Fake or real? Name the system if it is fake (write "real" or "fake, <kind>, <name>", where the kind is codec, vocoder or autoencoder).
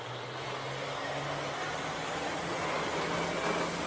real